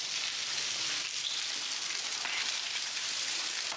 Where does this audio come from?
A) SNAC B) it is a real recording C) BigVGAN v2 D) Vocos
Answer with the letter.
B